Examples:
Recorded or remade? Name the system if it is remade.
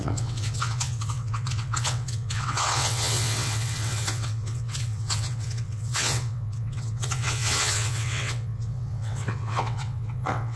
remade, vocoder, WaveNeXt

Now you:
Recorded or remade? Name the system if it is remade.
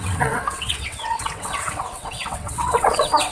remade, vocoder, WaveNeXt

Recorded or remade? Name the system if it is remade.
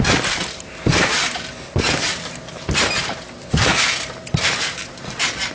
recorded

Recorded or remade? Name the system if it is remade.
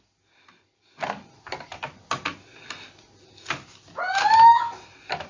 recorded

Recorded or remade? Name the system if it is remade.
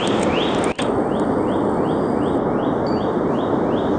recorded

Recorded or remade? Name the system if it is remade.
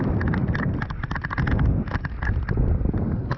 recorded